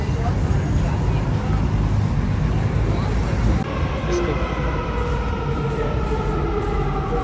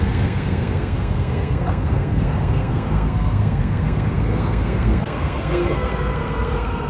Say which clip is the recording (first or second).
first